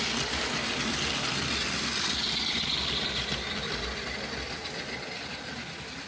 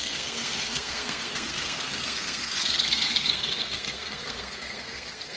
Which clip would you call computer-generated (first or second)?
second